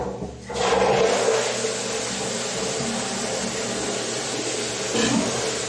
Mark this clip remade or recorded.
recorded